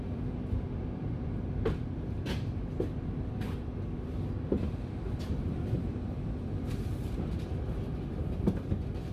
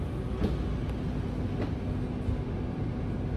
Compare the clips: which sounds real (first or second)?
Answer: second